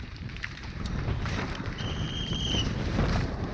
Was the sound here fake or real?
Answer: fake